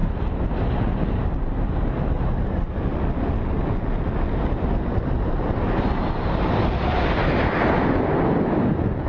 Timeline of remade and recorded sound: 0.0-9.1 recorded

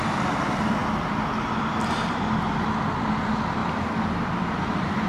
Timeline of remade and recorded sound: 0.0-5.1 recorded

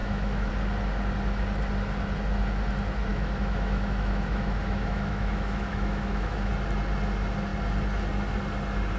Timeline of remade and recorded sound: 0.0-0.5 remade; 0.5-3.1 recorded; 3.1-6.5 remade; 6.5-9.0 recorded

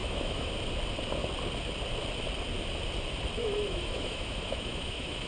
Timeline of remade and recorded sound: 0.0-0.5 remade; 0.5-3.4 recorded; 3.4-5.3 remade